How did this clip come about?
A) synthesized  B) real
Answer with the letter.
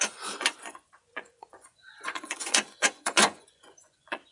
A